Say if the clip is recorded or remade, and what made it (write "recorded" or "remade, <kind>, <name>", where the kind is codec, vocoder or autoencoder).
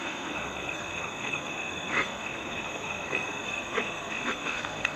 remade, codec, SNAC